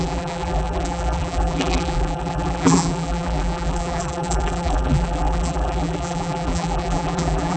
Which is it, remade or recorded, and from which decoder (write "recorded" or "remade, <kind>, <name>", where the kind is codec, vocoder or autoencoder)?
remade, vocoder, BigVGAN v2